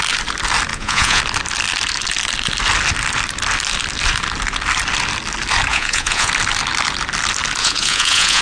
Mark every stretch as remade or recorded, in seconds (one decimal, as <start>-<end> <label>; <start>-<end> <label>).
0.0-0.7 recorded; 0.7-1.2 remade; 1.2-5.7 recorded; 5.7-6.3 remade; 6.3-7.6 recorded; 7.6-8.4 remade